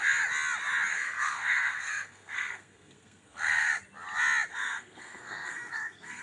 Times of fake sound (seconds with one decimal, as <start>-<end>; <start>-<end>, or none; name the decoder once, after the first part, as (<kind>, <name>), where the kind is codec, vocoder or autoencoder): 0.9-3.7 (codec, SNAC); 4.5-6.2